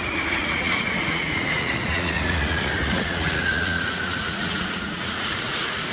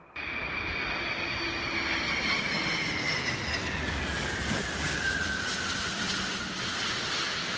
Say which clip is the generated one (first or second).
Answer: first